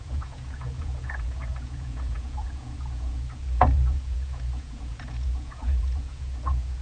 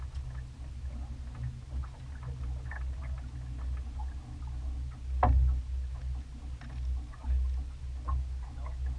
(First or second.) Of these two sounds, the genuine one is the second